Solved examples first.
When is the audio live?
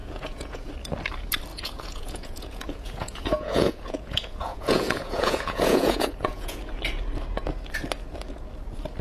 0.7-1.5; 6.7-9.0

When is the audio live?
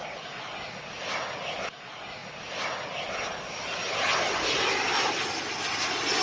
0.0-6.2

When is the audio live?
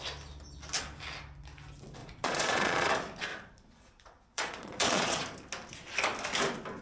0.0-2.0; 2.9-3.3; 5.2-6.8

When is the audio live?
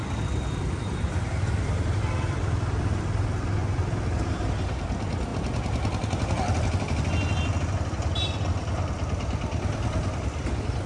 0.0-10.9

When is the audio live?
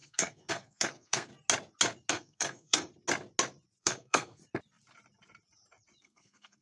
1.3-2.1; 2.9-3.8; 4.4-6.0